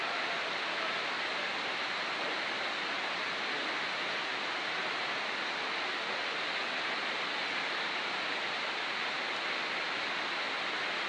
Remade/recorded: recorded